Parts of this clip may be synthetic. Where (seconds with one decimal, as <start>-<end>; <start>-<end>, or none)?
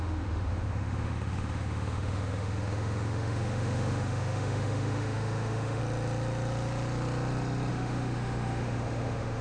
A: 0.0-5.8; 7.7-9.4